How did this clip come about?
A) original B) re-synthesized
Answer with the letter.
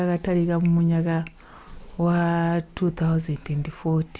A